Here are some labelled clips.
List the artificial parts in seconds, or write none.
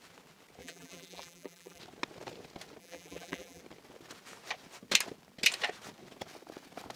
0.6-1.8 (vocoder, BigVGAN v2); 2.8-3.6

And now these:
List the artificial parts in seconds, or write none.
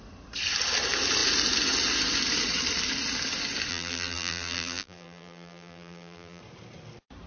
3.7-6.4 (vocoder, BigVGAN v2)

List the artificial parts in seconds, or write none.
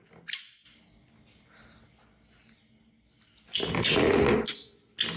none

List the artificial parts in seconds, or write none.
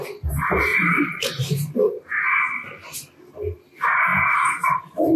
0.7-2.2 (vocoder, BigVGAN v2); 4.1-4.8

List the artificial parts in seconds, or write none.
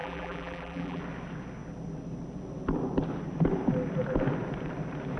0.0-1.0 (vocoder, BigVGAN v2)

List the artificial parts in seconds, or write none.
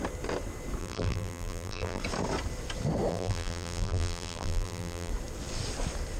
0.8-2.0 (vocoder, BigVGAN v2); 3.1-5.1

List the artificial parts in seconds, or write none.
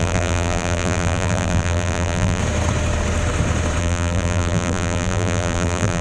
0.0-2.4 (vocoder, BigVGAN v2); 3.8-6.0